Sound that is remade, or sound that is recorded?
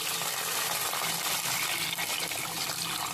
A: recorded